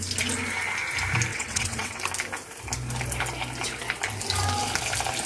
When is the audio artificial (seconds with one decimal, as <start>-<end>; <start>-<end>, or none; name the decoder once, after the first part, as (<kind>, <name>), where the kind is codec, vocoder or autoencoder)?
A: 1.3-2.0 (vocoder, WaveNeXt)